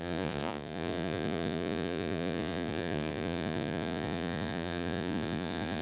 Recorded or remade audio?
remade